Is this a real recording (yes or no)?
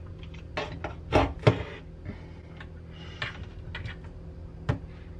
yes